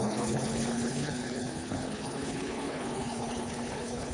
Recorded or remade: remade